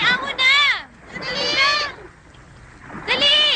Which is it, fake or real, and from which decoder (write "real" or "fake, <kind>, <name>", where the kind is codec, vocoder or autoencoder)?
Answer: real